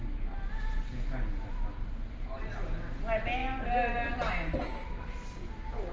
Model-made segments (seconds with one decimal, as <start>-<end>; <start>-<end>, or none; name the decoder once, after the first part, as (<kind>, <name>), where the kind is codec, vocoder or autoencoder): 4.7-5.9 (vocoder, BigVGAN v2)